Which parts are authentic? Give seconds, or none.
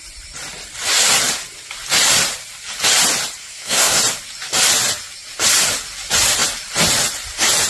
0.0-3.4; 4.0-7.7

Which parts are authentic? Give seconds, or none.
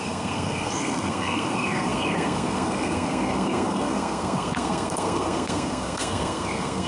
none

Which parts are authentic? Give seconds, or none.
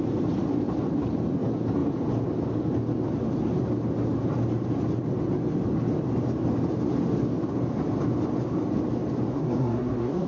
0.0-9.3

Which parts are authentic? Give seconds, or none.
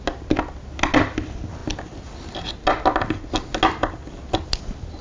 0.0-5.0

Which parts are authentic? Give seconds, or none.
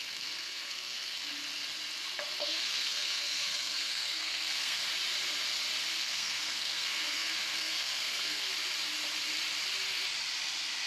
1.3-2.4; 4.8-5.9; 8.5-10.9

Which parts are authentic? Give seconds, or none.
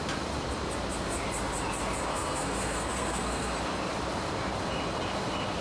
0.0-2.1; 3.6-5.6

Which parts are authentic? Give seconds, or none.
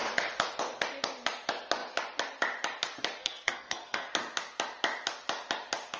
0.0-3.2; 4.1-6.0